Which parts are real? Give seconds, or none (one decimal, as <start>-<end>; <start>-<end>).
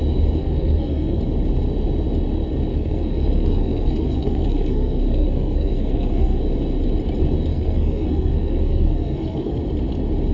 0.0-0.4; 1.2-2.7; 6.4-7.5; 9.6-10.3